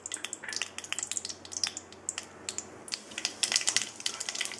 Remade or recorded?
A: recorded